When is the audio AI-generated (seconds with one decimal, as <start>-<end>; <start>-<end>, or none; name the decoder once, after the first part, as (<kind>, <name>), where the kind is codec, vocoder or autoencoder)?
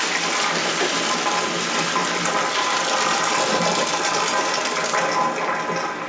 none